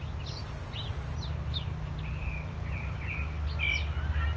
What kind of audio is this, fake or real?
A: real